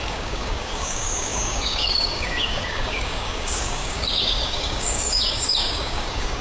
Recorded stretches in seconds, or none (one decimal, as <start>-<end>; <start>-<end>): none